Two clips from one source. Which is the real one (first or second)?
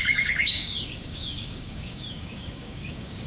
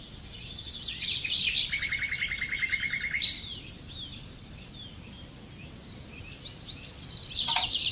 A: second